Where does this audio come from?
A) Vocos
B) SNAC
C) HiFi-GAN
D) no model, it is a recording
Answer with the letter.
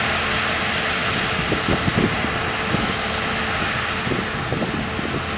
D